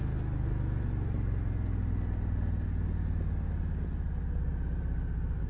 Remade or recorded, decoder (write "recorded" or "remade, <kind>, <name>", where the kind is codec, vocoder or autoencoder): recorded